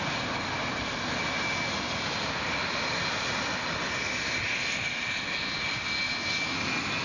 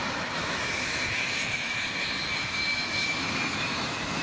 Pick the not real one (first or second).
second